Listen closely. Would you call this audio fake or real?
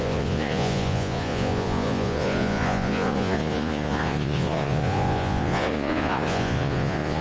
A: fake